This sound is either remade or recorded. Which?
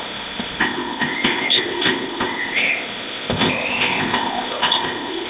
remade